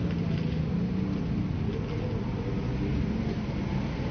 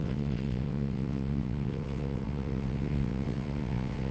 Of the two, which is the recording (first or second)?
first